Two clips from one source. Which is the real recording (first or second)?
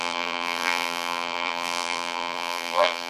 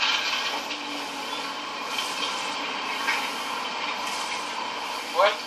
second